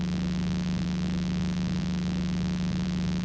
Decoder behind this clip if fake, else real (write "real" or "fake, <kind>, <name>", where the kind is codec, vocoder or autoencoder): real